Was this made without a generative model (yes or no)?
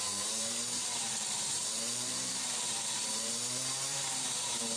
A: no